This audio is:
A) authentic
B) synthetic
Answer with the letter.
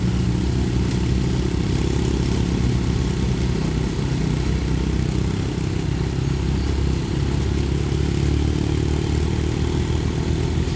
A